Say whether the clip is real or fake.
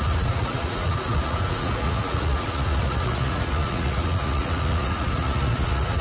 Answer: fake